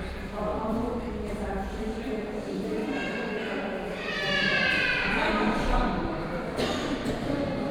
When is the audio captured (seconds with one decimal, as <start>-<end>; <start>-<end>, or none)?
2.8-5.3